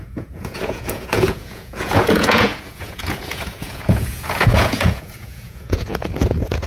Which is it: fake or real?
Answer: fake